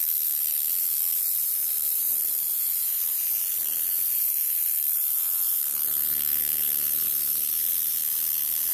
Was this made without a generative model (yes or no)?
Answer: no